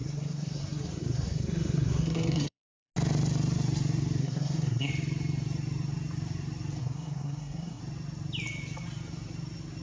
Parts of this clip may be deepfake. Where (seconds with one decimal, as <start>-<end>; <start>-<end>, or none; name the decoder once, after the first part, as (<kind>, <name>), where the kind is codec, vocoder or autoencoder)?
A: 0.0-2.9 (codec, SNAC); 4.2-4.9; 6.8-7.8